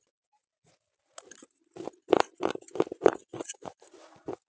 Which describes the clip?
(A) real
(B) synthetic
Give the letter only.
A